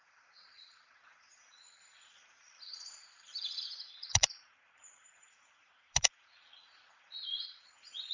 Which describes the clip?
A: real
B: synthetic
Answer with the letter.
B